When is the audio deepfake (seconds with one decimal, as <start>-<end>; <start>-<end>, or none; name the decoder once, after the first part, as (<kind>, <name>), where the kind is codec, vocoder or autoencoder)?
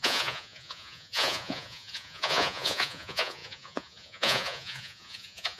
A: 0.0-5.6 (vocoder, Vocos)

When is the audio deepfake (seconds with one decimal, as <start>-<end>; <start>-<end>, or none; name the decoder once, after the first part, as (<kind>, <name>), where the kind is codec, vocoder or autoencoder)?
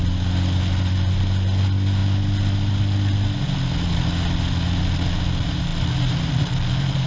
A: none